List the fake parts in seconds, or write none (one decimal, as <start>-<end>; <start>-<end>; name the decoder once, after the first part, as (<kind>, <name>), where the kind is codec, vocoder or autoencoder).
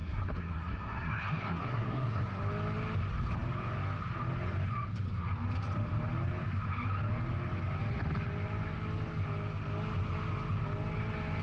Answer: 0.0-2.4 (codec, SNAC)